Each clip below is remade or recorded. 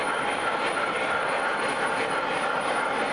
remade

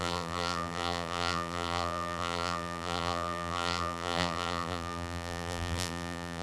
remade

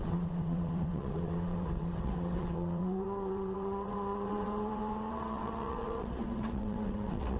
remade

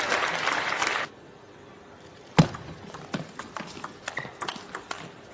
recorded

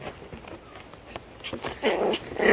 recorded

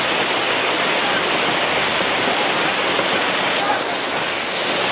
recorded